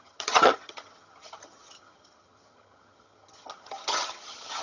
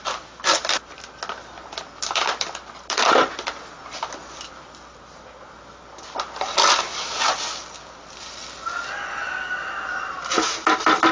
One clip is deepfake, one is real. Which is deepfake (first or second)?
first